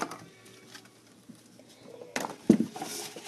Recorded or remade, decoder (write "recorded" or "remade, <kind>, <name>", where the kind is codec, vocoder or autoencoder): recorded